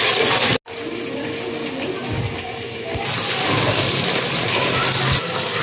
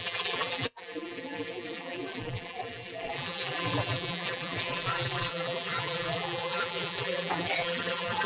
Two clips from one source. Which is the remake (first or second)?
second